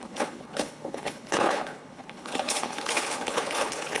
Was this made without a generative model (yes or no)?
no